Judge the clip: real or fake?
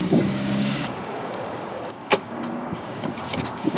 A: fake